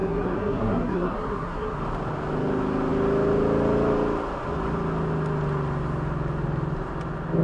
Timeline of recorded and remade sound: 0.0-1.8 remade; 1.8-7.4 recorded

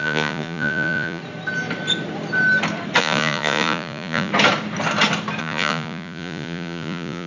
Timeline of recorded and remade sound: 0.0-1.2 remade; 1.2-3.0 recorded; 3.0-4.3 remade; 4.3-5.4 recorded; 5.4-7.3 remade

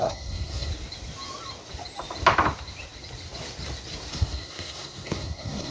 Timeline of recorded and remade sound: 0.0-0.7 remade; 0.7-4.1 recorded; 4.1-5.7 remade

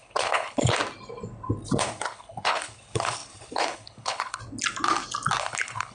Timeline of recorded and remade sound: 0.0-0.8 remade; 0.8-1.8 recorded; 1.8-4.4 remade; 4.4-5.4 recorded; 5.4-5.9 remade

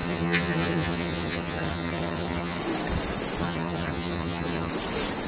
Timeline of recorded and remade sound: 0.0-2.6 remade; 2.6-3.4 recorded; 3.4-4.7 remade; 4.7-5.3 recorded